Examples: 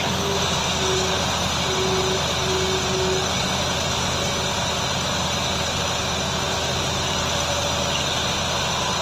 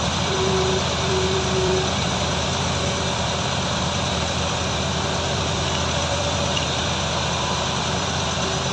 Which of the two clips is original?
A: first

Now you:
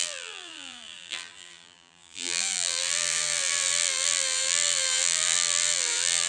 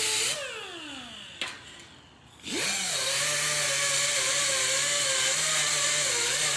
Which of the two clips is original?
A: second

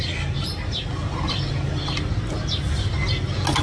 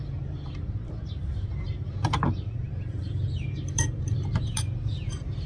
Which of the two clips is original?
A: first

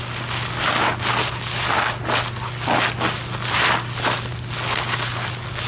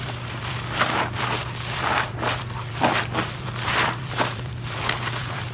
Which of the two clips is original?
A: first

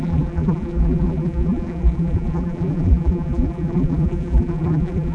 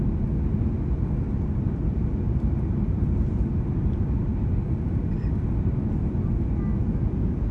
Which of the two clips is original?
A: second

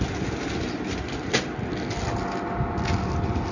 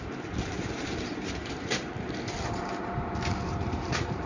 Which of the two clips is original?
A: first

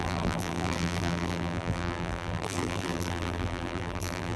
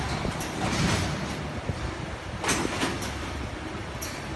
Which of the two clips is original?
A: second